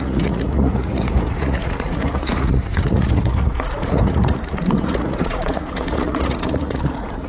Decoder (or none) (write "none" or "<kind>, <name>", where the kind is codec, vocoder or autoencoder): vocoder, Vocos